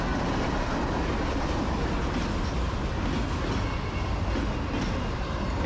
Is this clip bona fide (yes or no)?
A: yes